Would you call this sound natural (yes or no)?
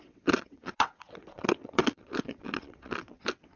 no